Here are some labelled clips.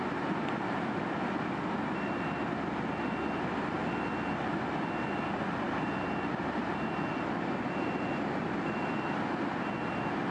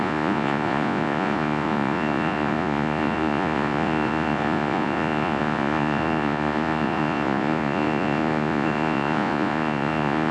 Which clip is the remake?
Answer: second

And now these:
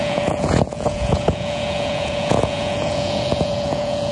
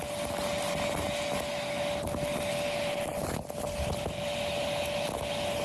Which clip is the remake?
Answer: first